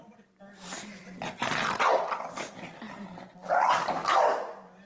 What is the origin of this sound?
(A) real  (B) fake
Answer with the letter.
A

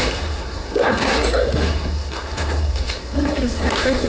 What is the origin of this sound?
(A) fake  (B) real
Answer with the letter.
A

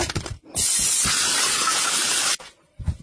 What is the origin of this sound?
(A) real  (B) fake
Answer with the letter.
A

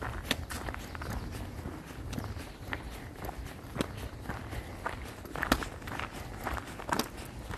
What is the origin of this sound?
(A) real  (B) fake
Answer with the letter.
A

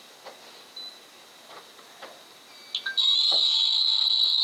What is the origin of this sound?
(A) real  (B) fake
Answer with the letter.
A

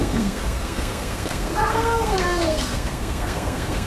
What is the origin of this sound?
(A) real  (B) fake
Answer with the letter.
B